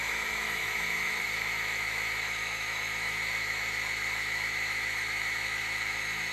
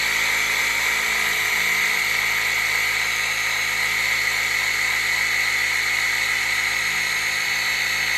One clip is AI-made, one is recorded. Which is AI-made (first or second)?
first